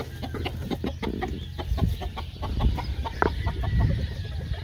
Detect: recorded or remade recorded